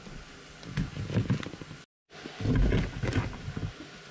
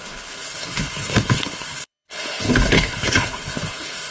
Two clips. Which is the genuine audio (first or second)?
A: first